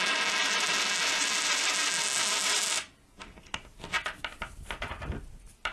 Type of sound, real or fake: real